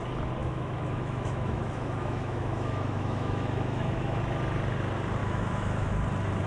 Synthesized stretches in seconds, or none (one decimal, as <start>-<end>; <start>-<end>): 0.4-4.2; 5.2-5.9